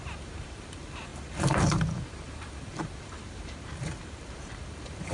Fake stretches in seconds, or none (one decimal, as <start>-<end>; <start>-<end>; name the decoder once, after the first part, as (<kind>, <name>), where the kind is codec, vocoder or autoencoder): 0.0-5.1 (vocoder, BigVGAN v2)